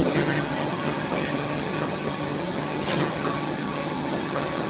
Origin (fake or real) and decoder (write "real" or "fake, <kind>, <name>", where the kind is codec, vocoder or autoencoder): fake, vocoder, HiFi-GAN